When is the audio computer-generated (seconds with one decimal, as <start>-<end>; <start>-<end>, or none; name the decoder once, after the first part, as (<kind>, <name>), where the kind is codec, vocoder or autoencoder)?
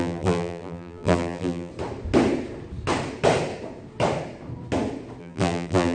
0.0-1.7 (vocoder, BigVGAN v2); 5.2-5.9